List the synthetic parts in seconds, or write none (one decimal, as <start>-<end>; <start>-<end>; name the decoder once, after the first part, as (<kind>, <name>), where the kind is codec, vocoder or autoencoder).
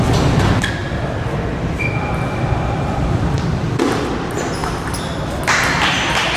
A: 0.8-3.8 (vocoder, BigVGAN v2); 4.6-5.1